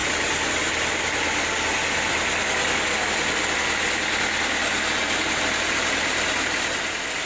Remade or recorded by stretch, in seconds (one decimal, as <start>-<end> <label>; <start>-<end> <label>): 0.0-7.3 recorded